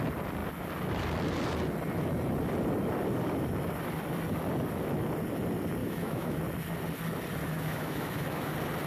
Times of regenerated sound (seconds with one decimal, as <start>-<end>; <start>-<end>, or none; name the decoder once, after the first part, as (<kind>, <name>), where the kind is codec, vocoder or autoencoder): 5.8-6.4 (autoencoder, DAC-VAE); 7.4-8.5